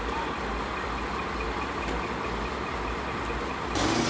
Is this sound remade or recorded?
recorded